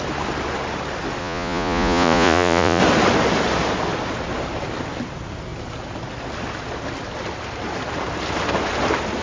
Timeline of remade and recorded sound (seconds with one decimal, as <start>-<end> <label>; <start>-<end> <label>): 0.0-1.2 recorded; 1.2-2.8 remade; 2.8-9.2 recorded